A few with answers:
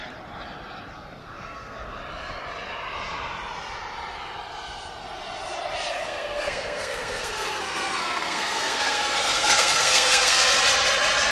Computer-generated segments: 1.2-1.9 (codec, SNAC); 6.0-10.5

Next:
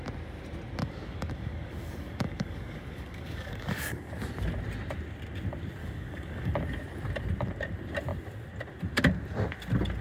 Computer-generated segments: 0.8-4.1 (codec, DAC); 5.8-6.5

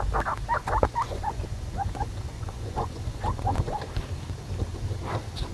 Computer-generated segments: 0.6-3.9 (vocoder, Vocos)

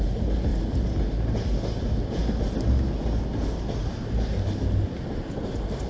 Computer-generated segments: none

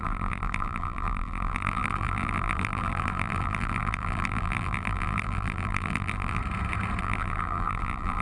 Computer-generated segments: 0.0-6.4 (vocoder, BigVGAN v2); 7.0-8.2

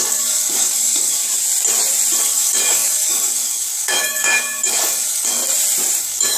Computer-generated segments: 0.0-1.2 (codec, DAC); 2.2-5.4; 6.0-6.4

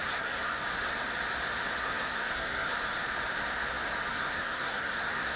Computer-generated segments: 0.0-0.6 (codec, SNAC); 1.8-2.7; 4.1-5.4